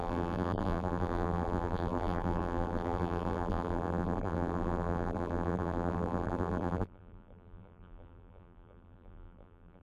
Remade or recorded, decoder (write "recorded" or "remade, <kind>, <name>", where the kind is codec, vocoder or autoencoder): remade, vocoder, BigVGAN v2